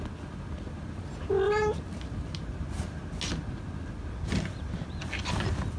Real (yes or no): yes